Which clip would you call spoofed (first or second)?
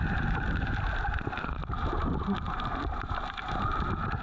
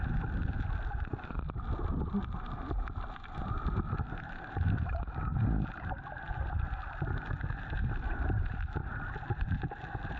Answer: first